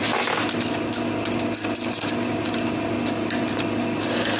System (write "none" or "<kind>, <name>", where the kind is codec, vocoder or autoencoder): none